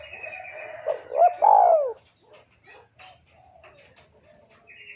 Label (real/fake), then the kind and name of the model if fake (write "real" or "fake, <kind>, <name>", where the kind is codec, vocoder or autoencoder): real